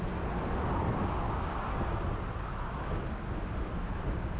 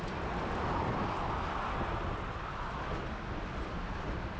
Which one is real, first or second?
first